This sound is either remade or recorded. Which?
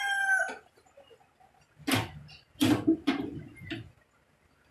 recorded